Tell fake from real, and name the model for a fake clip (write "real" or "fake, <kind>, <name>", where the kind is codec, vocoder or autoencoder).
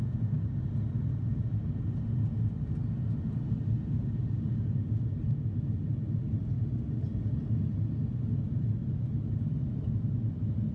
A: real